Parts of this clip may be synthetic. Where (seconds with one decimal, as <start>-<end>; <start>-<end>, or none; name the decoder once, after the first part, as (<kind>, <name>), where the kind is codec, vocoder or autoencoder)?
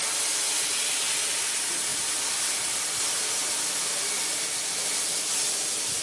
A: none